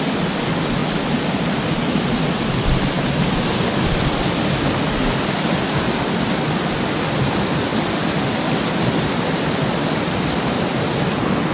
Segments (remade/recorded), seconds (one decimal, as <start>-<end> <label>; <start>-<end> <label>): 0.0-11.5 recorded